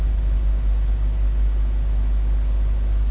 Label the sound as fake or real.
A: real